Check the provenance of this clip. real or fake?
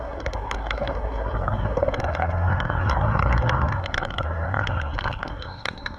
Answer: fake